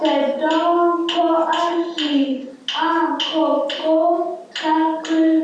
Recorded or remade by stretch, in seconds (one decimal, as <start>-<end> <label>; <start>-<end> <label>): 0.0-1.7 recorded; 1.7-2.5 remade; 2.5-5.4 recorded